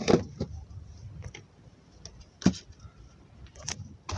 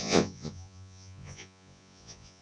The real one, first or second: first